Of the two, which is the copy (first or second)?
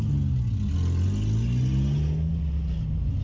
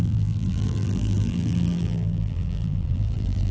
second